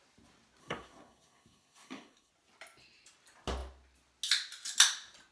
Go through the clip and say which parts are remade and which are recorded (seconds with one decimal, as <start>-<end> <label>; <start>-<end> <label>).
0.0-0.6 recorded; 0.6-2.3 remade; 2.3-5.3 recorded